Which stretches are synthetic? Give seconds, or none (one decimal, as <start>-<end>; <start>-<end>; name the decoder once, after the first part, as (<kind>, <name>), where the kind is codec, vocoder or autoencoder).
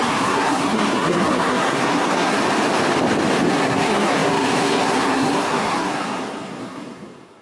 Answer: 0.0-2.4 (codec, SNAC); 3.5-7.4